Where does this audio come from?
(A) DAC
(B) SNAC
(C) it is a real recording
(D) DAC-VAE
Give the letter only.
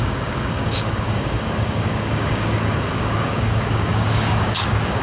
A